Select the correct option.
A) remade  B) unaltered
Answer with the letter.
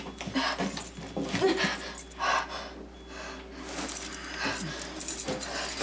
B